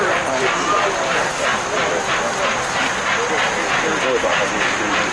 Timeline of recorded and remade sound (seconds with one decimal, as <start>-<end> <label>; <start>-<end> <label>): 0.0-5.1 recorded